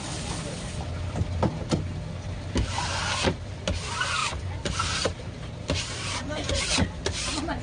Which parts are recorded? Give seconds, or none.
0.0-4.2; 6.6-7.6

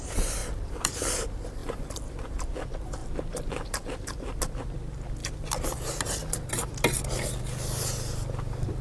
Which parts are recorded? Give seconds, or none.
0.0-0.4; 1.2-1.6; 2.4-3.0; 4.4-8.8

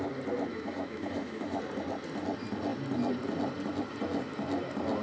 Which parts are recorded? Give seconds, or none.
0.0-0.5; 1.6-5.0